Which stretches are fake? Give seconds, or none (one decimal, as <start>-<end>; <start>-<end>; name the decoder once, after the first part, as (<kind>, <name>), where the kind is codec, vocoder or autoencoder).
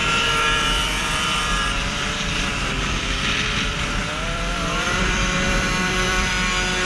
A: 0.0-3.0 (vocoder, BigVGAN v2); 4.1-6.3